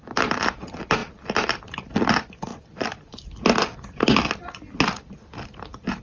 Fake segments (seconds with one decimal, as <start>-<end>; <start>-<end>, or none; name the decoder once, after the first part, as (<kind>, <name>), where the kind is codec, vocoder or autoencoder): none